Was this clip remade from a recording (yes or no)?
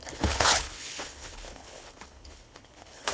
yes